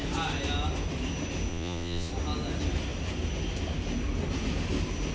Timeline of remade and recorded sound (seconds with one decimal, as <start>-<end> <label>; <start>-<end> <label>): 0.0-1.5 recorded; 1.5-2.1 remade; 2.1-5.1 recorded